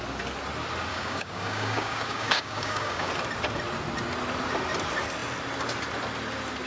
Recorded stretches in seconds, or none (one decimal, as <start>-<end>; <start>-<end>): 0.0-0.9; 3.1-6.7